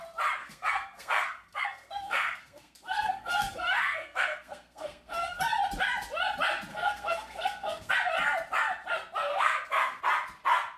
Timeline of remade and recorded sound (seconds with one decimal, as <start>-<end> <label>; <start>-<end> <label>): 0.0-0.4 recorded; 0.4-5.4 remade; 5.4-6.7 recorded; 6.7-7.9 remade; 7.9-9.3 recorded; 9.3-10.0 remade; 10.0-10.8 recorded